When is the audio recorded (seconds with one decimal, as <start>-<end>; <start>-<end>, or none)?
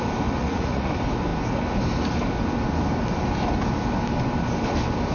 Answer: 0.0-0.4; 0.9-5.1